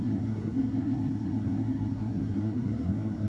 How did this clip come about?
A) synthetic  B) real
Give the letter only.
A